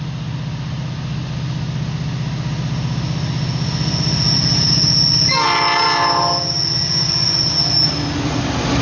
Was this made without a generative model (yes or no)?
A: yes